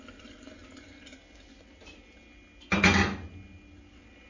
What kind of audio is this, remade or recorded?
recorded